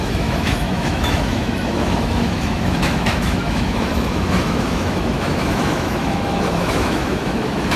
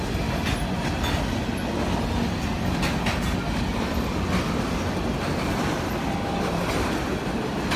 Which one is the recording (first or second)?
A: second